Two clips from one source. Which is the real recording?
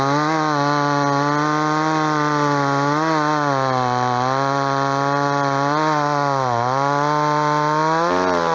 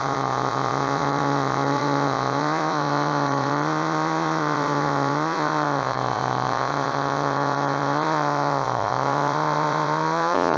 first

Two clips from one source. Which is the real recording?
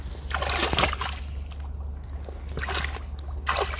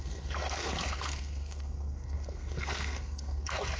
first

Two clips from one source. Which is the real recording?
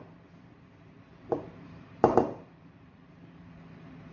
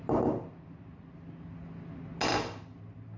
second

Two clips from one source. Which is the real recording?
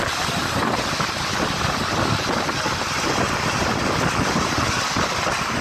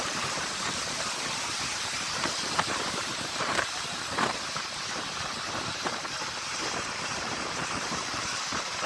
first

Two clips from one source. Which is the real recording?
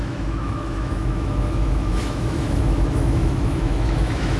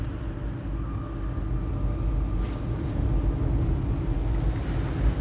second